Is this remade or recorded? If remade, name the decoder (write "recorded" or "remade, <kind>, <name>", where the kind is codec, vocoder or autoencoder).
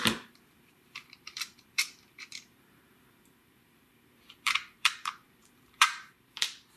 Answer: remade, vocoder, BigVGAN v2